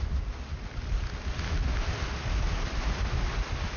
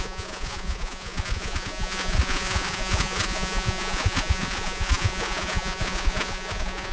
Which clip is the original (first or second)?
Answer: first